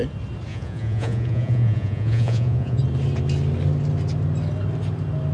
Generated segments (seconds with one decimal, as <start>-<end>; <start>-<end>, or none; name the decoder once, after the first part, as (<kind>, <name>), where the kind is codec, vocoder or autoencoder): 0.5-2.8 (vocoder, Vocos)